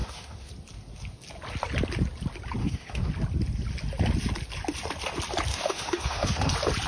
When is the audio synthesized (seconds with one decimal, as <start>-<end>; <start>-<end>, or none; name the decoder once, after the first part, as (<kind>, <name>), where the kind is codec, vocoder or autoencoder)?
0.0-0.5 (autoencoder, DAC-VAE); 2.6-3.1; 5.5-6.5